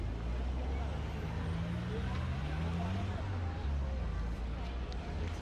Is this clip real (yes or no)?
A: yes